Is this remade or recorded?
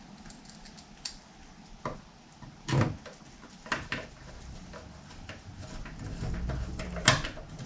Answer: recorded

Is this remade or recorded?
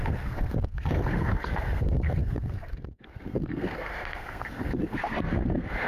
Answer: remade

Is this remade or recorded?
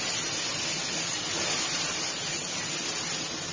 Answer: recorded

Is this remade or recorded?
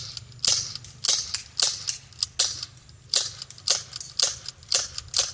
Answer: recorded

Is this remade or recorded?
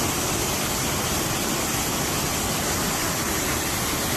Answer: recorded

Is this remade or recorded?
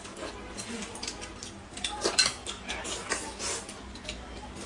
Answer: recorded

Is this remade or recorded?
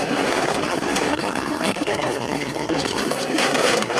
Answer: remade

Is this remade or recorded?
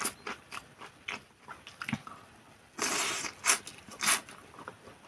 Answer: recorded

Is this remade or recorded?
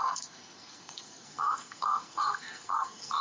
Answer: remade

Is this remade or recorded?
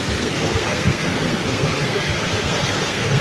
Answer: remade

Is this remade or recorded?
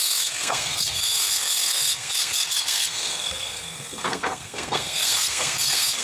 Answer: remade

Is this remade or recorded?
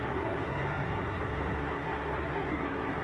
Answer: remade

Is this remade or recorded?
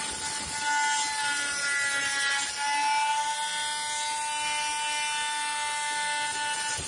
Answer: recorded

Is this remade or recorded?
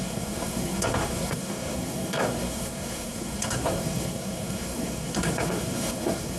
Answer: remade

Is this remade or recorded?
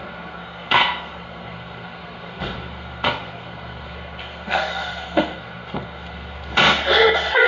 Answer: remade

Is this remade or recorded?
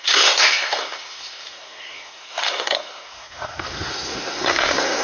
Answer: remade